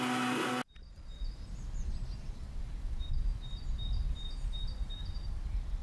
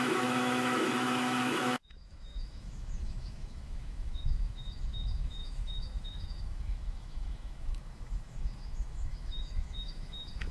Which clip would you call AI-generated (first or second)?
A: second